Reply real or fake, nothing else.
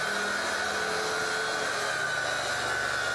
real